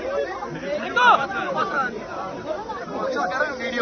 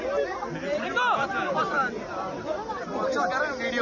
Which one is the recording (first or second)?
second